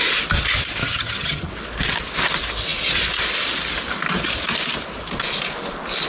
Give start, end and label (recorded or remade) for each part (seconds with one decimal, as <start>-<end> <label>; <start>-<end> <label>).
0.0-0.8 recorded; 0.8-1.5 remade; 1.5-6.1 recorded